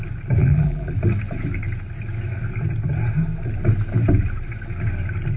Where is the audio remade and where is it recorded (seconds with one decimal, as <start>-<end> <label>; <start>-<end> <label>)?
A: 0.0-0.4 recorded; 0.4-0.9 remade; 0.9-5.4 recorded